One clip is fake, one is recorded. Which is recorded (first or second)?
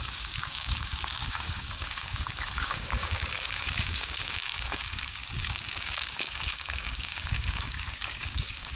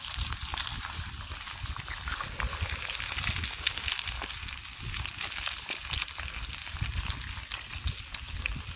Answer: second